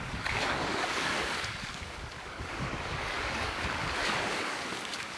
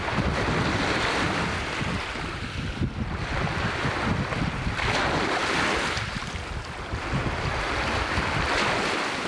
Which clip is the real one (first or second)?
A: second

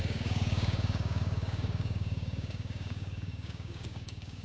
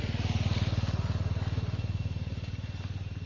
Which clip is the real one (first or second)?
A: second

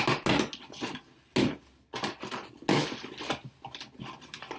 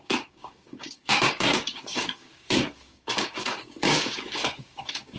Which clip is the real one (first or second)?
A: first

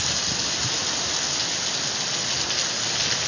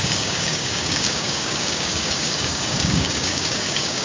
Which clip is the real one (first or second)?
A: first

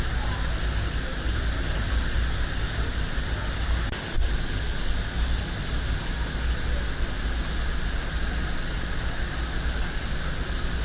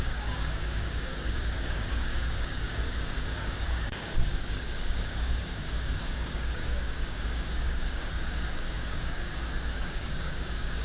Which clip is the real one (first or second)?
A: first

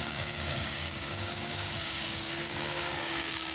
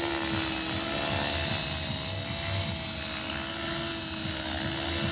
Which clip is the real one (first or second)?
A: second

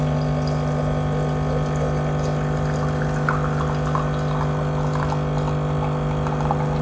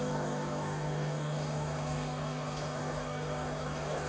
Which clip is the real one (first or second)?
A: first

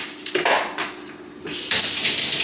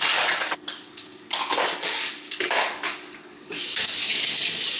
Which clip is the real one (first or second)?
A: first